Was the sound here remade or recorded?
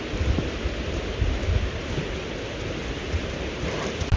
recorded